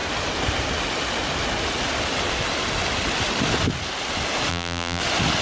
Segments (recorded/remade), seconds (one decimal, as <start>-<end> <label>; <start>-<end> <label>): 0.0-4.5 recorded; 4.5-5.0 remade; 5.0-5.4 recorded